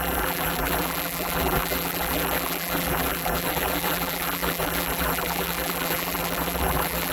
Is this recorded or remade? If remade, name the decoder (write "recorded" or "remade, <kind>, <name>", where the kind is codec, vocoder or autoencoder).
remade, vocoder, BigVGAN v2